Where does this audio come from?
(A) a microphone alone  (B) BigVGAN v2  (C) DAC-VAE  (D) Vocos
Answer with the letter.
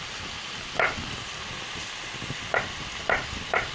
A